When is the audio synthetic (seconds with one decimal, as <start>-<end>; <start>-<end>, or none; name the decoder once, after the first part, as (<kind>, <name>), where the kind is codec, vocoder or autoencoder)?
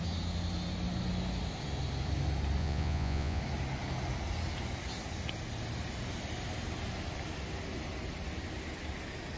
2.6-3.4 (vocoder, Vocos)